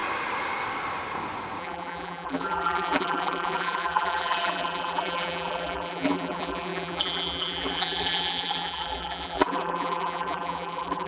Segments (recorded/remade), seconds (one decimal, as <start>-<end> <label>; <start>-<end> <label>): 0.0-1.6 recorded; 1.6-11.1 remade